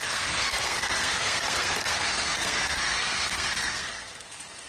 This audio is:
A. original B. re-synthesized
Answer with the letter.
B